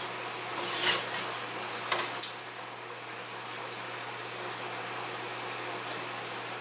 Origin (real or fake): real